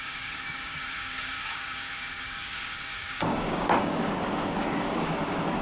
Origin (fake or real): fake